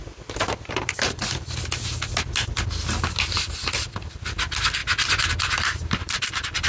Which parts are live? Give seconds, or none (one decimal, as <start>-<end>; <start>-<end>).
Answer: 0.0-4.8